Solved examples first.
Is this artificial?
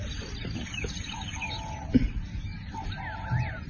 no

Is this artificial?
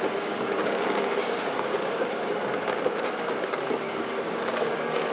yes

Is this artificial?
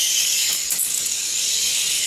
yes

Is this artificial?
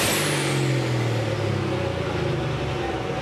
no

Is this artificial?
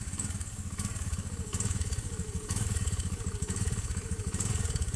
yes